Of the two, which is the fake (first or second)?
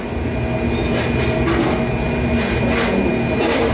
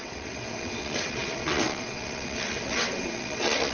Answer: second